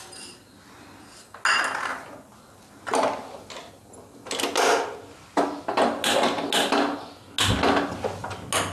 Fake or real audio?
real